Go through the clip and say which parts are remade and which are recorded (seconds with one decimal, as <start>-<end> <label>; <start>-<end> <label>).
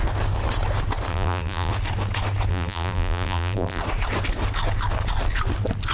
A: 0.0-1.1 recorded; 1.1-1.7 remade; 1.7-2.5 recorded; 2.5-3.8 remade; 3.8-5.9 recorded